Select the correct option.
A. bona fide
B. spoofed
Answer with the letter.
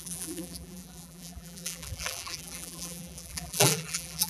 B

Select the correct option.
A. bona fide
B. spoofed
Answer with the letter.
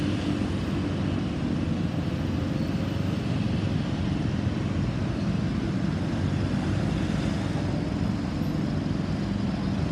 A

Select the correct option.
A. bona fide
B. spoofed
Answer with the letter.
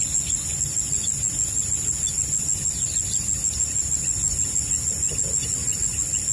A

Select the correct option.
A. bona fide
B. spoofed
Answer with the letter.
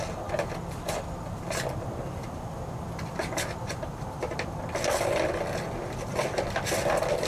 A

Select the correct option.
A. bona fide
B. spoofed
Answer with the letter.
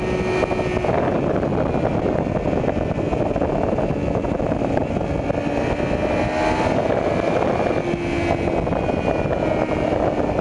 A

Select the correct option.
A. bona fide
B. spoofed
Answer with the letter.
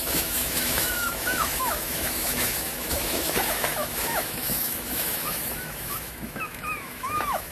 B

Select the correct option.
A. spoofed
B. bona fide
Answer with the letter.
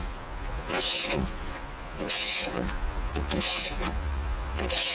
A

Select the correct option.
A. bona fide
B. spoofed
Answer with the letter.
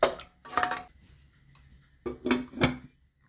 A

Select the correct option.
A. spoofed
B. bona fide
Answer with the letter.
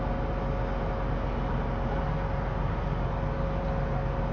B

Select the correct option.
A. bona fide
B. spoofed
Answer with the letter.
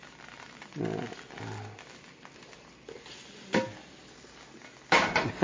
A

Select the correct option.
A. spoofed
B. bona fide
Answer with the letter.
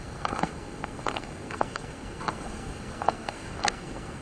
A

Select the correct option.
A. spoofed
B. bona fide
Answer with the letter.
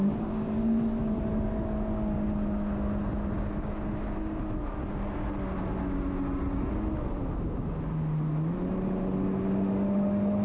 B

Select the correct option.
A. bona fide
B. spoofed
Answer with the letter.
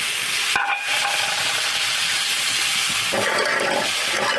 A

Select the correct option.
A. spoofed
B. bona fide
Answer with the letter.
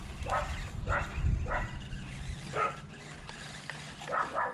B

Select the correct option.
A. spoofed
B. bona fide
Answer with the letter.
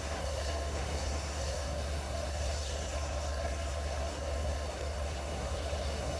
A